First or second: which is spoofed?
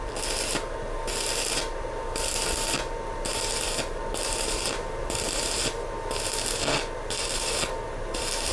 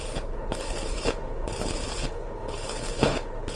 second